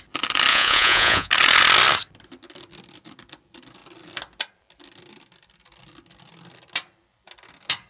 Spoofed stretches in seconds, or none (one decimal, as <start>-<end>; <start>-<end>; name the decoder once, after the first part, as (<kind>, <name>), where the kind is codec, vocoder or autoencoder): 0.5-1.3 (vocoder, Vocos)